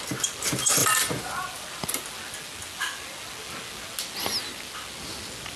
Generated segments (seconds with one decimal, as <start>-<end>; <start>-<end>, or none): 0.8-1.4